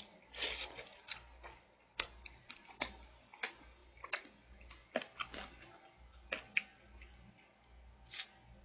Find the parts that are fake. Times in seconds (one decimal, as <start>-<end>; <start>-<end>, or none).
none